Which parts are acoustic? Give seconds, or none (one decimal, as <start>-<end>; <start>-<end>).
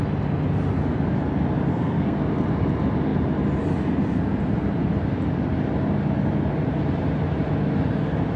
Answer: 0.0-1.7; 2.2-8.4